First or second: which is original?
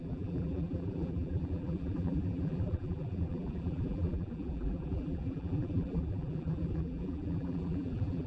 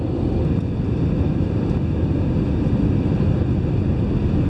second